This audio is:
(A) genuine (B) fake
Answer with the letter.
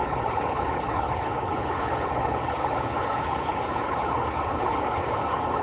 B